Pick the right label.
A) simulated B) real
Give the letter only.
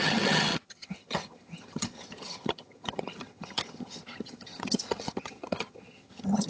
A